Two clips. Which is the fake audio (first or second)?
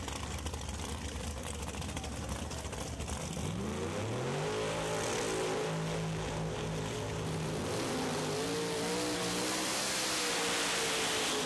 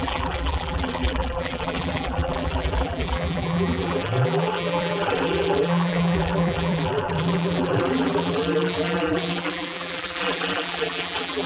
second